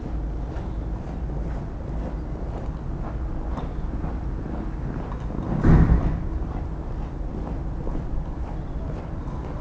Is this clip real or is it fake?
real